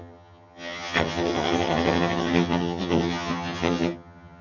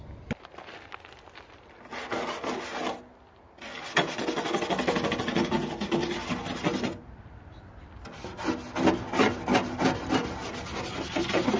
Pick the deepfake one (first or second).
first